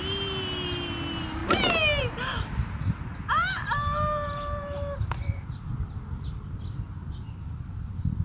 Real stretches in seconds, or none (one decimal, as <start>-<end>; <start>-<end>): 0.0-8.2